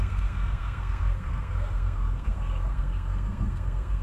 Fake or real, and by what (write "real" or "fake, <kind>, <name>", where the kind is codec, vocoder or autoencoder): fake, codec, SNAC